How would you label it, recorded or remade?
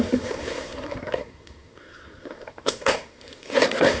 remade